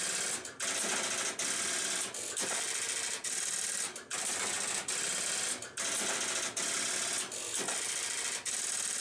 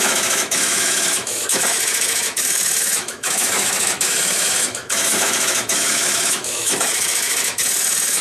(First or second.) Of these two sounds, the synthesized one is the second